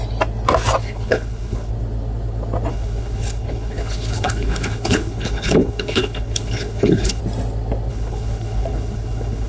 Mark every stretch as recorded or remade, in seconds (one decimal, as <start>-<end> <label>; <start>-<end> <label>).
0.0-0.8 recorded; 0.8-1.7 remade; 1.7-2.7 recorded; 2.7-7.2 remade; 7.2-7.9 recorded; 7.9-9.5 remade